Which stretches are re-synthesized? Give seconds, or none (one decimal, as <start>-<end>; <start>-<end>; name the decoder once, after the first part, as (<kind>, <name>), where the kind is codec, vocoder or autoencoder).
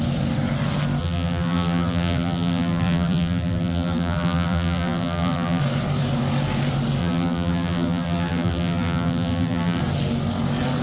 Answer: 1.0-5.6 (vocoder, BigVGAN v2); 7.0-9.8